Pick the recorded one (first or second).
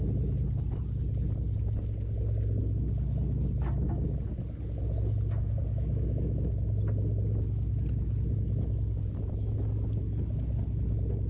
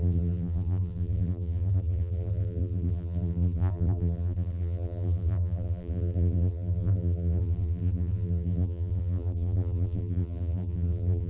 first